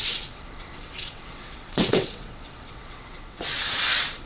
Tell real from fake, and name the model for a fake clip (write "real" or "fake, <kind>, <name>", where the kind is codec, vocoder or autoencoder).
fake, vocoder, WaveNeXt